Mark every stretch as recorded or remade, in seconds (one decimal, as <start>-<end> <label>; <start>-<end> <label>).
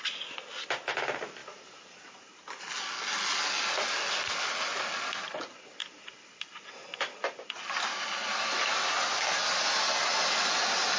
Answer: 0.0-1.4 recorded; 1.4-2.7 remade; 2.7-11.0 recorded